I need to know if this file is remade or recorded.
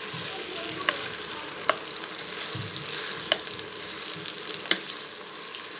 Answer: recorded